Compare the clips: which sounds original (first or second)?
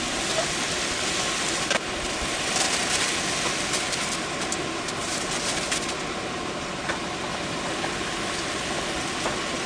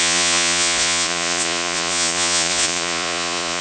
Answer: first